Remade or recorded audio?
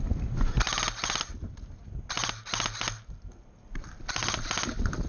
recorded